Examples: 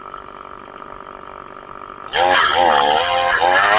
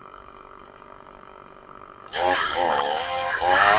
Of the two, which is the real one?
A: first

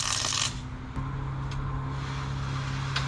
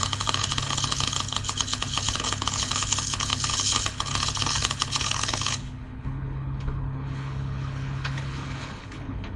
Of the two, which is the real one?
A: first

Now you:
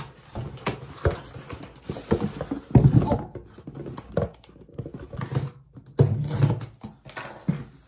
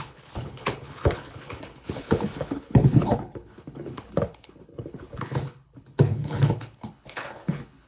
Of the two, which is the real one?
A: first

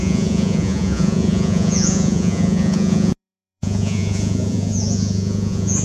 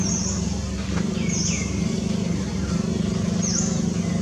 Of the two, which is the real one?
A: second